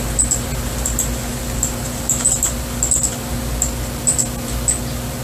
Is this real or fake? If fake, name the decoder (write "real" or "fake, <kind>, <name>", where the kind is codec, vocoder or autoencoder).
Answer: real